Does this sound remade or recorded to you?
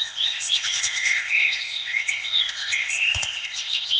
remade